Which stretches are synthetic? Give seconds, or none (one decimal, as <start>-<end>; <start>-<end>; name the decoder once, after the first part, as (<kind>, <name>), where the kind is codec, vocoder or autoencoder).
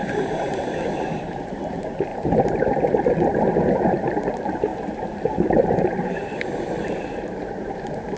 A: 0.0-4.7 (vocoder, BigVGAN v2); 5.3-6.2; 7.0-8.2